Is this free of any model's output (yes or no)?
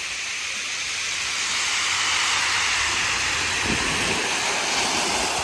yes